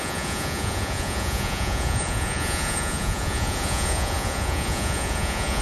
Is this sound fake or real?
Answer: fake